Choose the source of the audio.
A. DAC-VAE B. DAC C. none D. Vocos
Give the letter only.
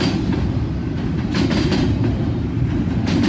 C